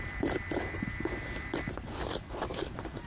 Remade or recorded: remade